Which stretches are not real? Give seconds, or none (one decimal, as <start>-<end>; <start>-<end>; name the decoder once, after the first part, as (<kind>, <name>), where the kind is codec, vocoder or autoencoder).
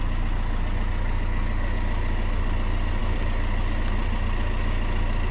none